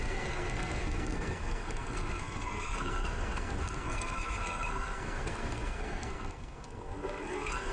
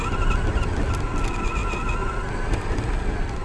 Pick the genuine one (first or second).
second